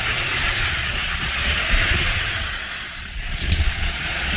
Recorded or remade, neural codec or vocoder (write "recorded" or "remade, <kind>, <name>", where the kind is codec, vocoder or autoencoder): remade, vocoder, Vocos